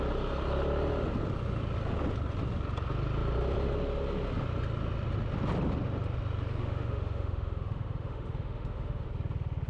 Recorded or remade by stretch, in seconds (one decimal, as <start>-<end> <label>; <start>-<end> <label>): 0.0-6.6 recorded; 6.6-9.1 remade; 9.1-9.7 recorded